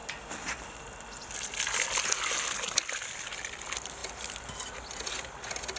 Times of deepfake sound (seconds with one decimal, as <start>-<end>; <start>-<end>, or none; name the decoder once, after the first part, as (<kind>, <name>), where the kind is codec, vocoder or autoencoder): none